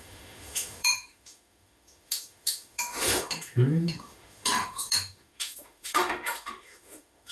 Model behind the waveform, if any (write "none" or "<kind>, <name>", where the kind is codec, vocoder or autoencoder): autoencoder, DAC-VAE